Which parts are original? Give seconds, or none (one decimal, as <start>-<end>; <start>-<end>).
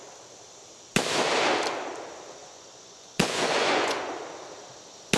0.0-2.4; 4.0-5.2